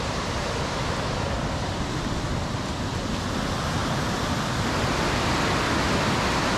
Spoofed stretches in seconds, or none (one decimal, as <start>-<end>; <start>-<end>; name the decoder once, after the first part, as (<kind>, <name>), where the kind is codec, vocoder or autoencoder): 0.0-6.6 (vocoder, BigVGAN v2)